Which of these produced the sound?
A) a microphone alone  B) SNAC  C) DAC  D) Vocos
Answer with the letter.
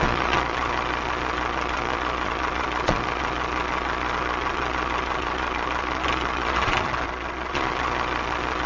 D